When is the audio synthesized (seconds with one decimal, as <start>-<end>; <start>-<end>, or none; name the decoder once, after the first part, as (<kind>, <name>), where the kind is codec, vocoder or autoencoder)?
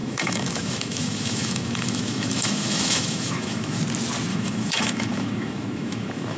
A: 0.0-3.8 (autoencoder, DAC-VAE); 4.3-6.4